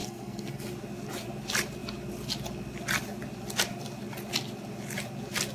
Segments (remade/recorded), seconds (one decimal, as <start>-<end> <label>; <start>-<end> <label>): 0.0-0.7 remade; 0.7-5.5 recorded